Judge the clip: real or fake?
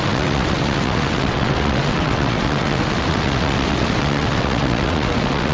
fake